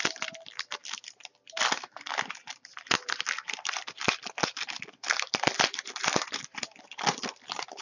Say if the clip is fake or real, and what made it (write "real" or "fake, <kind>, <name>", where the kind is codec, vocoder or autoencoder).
fake, vocoder, BigVGAN v2